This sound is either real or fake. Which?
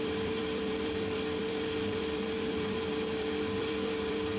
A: fake